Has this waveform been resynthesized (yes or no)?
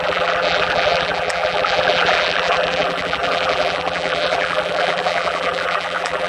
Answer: yes